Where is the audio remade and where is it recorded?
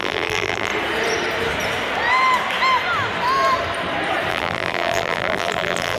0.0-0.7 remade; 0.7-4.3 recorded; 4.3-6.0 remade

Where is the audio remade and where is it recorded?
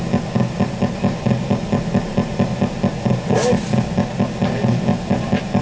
0.0-5.6 recorded